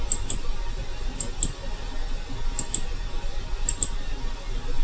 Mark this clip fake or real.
real